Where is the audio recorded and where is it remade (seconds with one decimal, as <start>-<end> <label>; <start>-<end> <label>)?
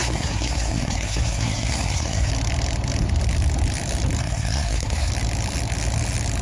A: 0.0-2.3 remade; 2.3-4.2 recorded; 4.2-5.1 remade; 5.1-6.4 recorded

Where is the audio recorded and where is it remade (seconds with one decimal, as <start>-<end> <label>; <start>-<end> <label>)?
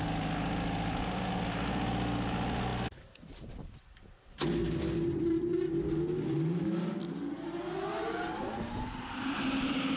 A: 0.0-10.0 recorded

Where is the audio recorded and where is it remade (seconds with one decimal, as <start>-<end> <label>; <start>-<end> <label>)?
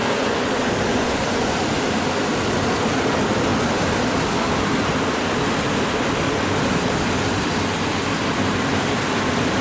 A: 0.0-0.5 remade; 0.5-0.9 recorded; 0.9-1.6 remade; 1.6-9.6 recorded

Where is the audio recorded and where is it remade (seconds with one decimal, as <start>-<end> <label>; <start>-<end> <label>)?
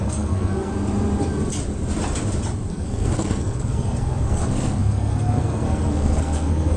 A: 0.0-0.7 remade; 0.7-2.7 recorded; 2.7-6.8 remade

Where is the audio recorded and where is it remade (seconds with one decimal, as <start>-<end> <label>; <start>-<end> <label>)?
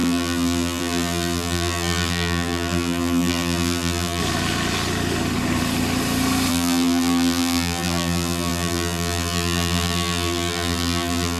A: 0.0-4.2 remade; 4.2-6.5 recorded; 6.5-11.4 remade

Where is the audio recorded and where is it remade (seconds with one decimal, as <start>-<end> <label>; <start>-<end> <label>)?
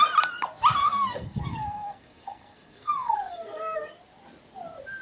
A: 0.0-0.8 recorded; 0.8-3.8 remade; 3.8-5.0 recorded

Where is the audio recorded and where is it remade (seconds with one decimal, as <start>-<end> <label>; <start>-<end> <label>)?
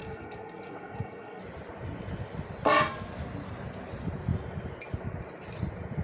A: 0.0-1.4 remade; 1.4-6.0 recorded